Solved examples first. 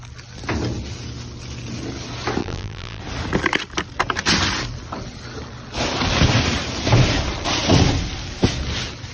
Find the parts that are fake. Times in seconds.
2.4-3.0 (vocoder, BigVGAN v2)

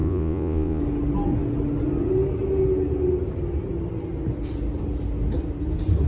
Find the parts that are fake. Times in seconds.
0.0-0.8 (vocoder, Vocos)

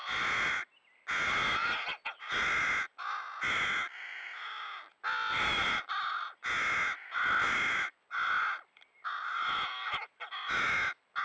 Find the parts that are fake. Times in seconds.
none